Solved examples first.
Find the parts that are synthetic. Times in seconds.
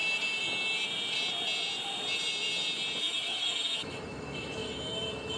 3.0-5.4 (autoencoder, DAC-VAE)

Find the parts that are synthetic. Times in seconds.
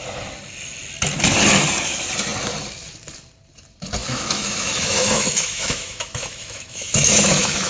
4.0-7.7 (autoencoder, DAC-VAE)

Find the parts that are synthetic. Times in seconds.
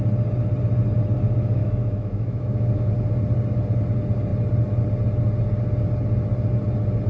1.6-2.9 (autoencoder, DAC-VAE)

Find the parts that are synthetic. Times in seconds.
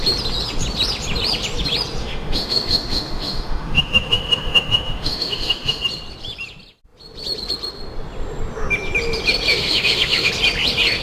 2.0-5.8 (autoencoder, DAC-VAE); 9.5-10.3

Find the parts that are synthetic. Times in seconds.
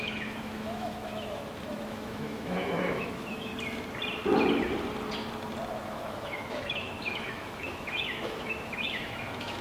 0.0-3.5 (autoencoder, DAC-VAE); 5.7-9.6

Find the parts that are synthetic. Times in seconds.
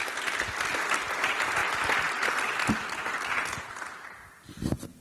none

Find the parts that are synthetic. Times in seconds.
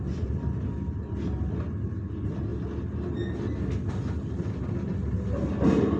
none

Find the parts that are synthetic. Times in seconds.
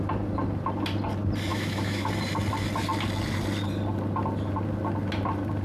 1.5-2.1 (autoencoder, DAC-VAE)